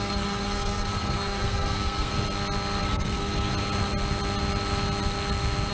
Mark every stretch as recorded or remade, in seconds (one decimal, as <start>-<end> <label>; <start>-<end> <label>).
0.0-2.1 remade; 2.1-2.8 recorded; 2.8-3.5 remade; 3.5-5.7 recorded